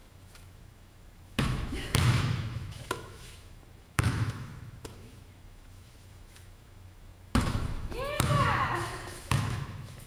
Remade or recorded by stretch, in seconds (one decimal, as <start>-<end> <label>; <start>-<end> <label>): 0.0-10.1 remade

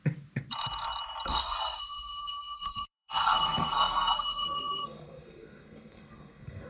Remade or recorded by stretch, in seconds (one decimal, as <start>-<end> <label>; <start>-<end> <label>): 0.0-1.3 recorded; 1.3-6.7 remade

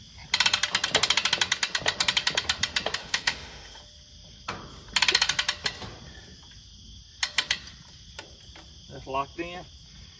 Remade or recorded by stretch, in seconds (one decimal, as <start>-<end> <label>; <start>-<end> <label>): 0.0-3.0 recorded; 3.0-3.8 remade; 3.8-10.2 recorded

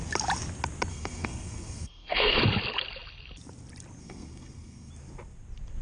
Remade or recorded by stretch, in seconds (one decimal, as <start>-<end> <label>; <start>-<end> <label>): 0.0-0.9 recorded; 0.9-2.4 remade; 2.4-4.0 recorded; 4.0-4.9 remade; 4.9-5.8 recorded

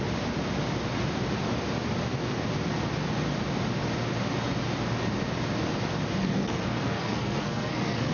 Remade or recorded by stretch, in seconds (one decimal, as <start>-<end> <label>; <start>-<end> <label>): 0.0-6.2 recorded; 6.2-8.1 remade

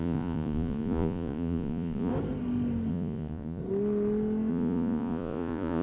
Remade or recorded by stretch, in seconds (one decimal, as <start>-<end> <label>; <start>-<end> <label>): 0.0-2.1 remade; 2.1-2.9 recorded; 2.9-3.6 remade; 3.6-4.5 recorded; 4.5-5.8 remade